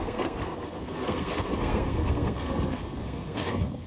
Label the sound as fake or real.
fake